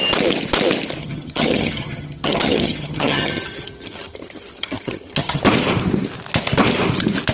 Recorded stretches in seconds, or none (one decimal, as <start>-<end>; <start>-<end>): 0.0-1.0; 5.4-7.3